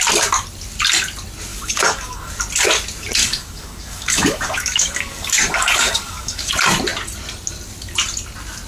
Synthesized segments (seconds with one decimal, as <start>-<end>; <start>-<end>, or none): 1.5-2.3; 3.2-6.5